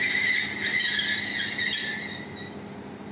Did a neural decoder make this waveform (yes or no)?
no